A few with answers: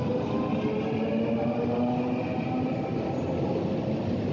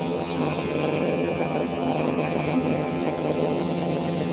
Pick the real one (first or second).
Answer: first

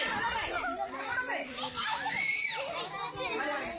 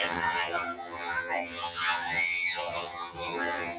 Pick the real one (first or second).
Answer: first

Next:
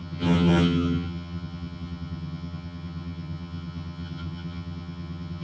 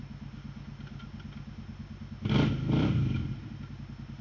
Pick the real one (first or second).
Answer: second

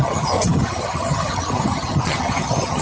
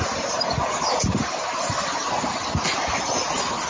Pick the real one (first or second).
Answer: second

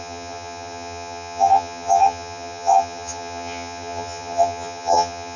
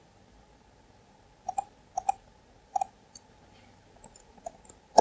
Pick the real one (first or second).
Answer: second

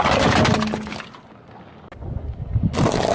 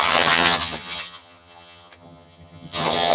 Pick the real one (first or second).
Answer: first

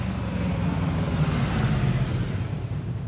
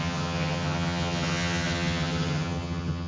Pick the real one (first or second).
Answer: first